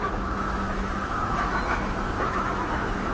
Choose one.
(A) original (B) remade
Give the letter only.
B